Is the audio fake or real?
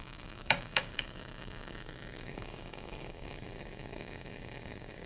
fake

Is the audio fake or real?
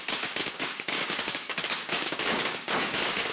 fake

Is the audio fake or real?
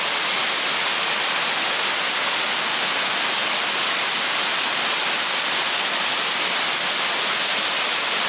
real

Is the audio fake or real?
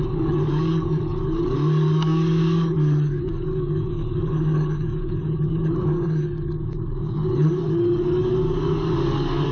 fake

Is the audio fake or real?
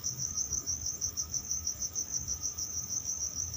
fake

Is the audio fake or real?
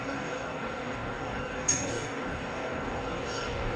fake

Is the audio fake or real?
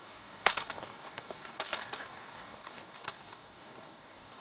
fake